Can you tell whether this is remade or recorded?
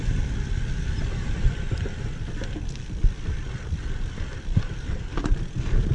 recorded